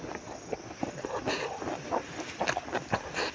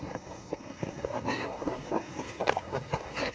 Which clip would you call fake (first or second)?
second